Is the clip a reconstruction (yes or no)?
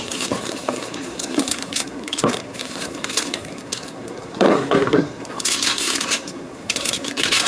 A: yes